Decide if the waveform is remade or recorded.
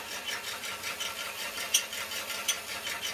recorded